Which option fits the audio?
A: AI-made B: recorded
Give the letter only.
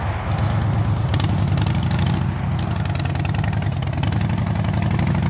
B